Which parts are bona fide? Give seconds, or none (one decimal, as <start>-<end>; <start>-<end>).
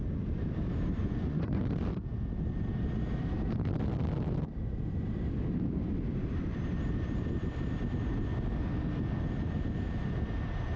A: 0.0-1.0; 1.6-10.8